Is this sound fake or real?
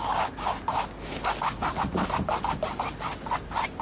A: real